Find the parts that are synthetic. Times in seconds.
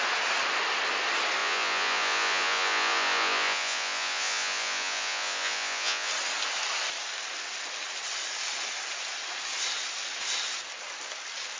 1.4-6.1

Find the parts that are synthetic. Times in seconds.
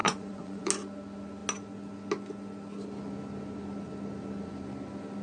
0.0-0.7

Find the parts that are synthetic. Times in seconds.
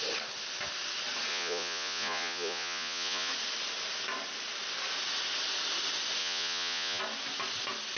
1.3-3.3; 6.2-7.0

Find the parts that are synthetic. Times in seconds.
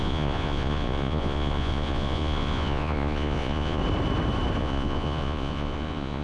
0.0-3.8; 4.6-6.2